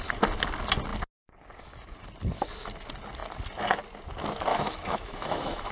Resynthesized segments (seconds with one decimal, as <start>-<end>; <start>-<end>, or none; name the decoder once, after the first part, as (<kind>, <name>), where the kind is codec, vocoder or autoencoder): 4.5-5.7 (autoencoder, DAC-VAE)